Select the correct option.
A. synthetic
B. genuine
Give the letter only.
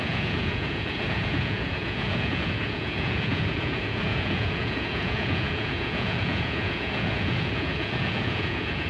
A